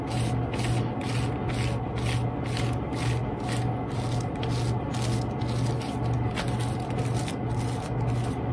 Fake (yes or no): no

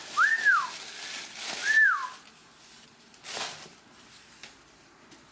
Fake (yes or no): no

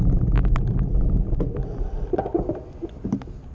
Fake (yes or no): no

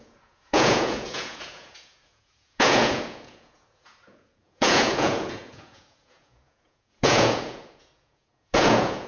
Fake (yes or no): yes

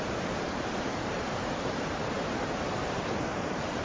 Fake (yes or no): yes